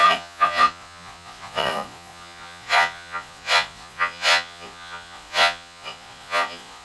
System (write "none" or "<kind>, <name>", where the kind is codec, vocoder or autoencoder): vocoder, Vocos